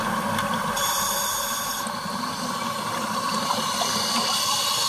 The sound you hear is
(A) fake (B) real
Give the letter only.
B